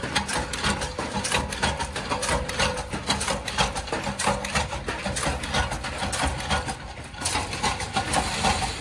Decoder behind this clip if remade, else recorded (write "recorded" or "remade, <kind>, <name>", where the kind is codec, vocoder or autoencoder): recorded